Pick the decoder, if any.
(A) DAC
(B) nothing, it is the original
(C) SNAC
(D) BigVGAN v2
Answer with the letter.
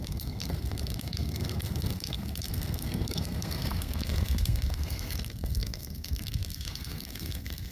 C